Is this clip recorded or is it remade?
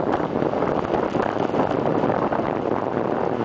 recorded